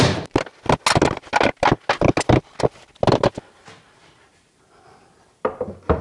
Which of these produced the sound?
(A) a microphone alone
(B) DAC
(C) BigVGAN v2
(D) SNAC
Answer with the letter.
A